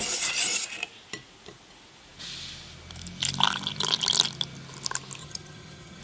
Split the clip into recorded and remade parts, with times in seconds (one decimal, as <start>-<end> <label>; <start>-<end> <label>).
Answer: 0.0-5.2 recorded; 5.2-6.0 remade